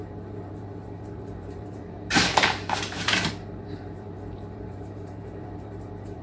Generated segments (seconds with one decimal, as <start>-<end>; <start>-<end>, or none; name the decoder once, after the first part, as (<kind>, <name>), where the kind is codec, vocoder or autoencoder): 0.0-6.2 (vocoder, BigVGAN v2)